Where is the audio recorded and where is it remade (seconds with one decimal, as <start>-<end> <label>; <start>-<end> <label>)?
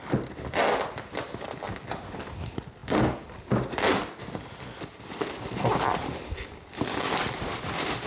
0.0-8.1 recorded